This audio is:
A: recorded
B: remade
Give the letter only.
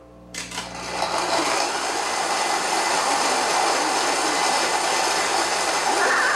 A